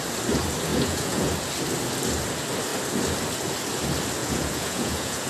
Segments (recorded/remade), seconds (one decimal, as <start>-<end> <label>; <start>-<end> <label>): 0.0-0.7 recorded; 0.7-1.3 remade; 1.3-4.2 recorded; 4.2-5.3 remade